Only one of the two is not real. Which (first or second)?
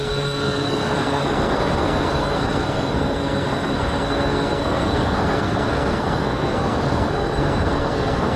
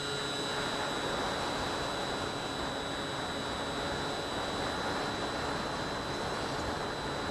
first